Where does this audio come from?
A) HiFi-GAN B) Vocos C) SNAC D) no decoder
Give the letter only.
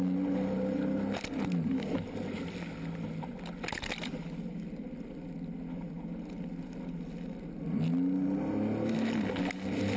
D